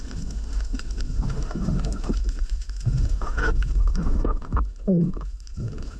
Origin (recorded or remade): remade